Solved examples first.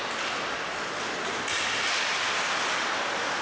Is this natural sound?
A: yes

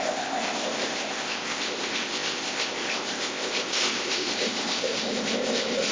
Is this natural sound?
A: no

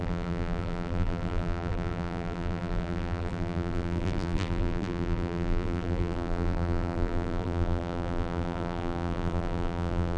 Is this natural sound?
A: no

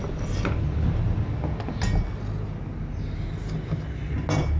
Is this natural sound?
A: yes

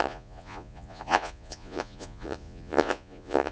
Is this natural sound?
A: no